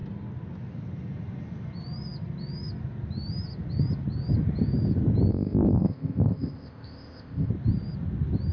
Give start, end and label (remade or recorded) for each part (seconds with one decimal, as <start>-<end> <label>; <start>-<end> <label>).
0.0-5.3 recorded; 5.3-7.5 remade; 7.5-8.5 recorded